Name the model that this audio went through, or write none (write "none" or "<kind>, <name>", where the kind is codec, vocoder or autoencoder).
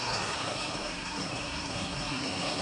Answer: codec, SNAC